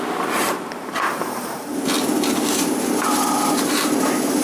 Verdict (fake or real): real